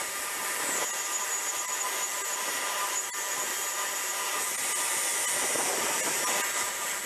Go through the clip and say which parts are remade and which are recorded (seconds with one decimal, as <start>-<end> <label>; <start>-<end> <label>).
0.0-7.1 recorded